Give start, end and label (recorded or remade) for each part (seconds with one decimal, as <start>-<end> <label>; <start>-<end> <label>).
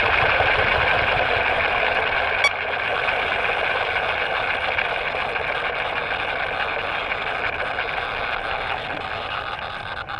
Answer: 0.0-10.2 recorded